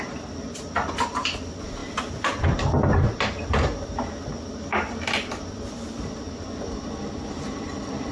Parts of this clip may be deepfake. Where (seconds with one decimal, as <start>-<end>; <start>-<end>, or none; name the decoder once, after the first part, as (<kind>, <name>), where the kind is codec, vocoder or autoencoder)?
none